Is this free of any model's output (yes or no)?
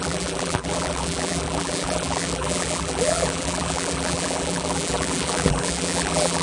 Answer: no